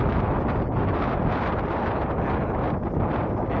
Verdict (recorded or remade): recorded